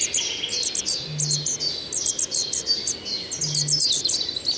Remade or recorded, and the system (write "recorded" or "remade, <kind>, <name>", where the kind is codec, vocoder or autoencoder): recorded